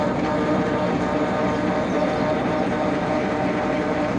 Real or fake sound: fake